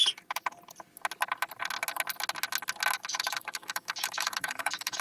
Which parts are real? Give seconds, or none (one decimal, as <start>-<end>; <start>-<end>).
0.0-3.0